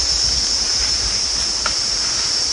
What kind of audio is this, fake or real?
real